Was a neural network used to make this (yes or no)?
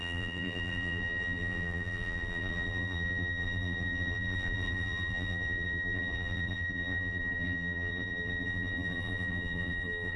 yes